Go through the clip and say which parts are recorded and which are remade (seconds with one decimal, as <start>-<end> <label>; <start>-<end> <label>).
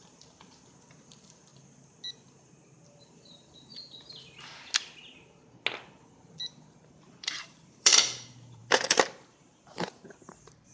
0.0-1.5 remade; 1.5-3.0 recorded; 3.0-3.7 remade; 3.7-6.9 recorded; 6.9-10.7 remade